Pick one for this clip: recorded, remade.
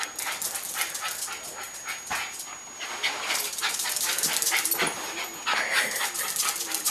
recorded